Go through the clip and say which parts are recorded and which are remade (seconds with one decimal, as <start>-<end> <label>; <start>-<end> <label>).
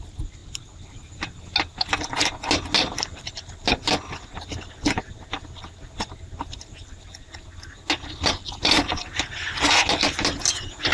0.0-10.9 recorded